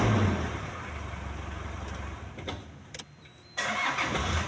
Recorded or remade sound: recorded